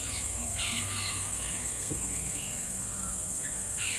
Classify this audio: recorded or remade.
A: remade